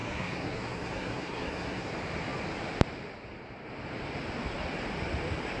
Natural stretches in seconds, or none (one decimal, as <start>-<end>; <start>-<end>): 1.9-5.6